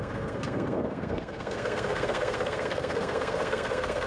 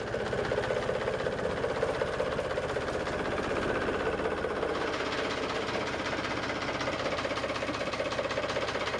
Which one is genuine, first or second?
second